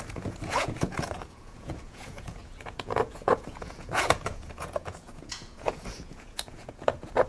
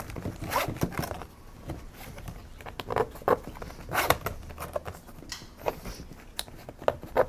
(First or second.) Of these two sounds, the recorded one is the second